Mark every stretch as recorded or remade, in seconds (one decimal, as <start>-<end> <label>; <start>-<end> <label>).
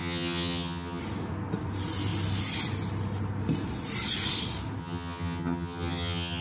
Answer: 0.0-1.0 remade; 1.0-4.8 recorded; 4.8-6.4 remade